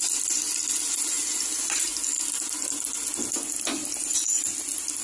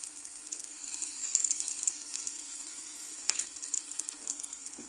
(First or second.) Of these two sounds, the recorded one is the first